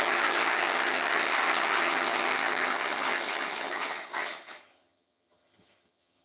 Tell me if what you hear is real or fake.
fake